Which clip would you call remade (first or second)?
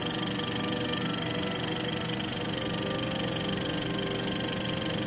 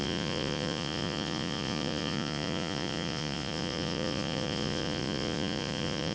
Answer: second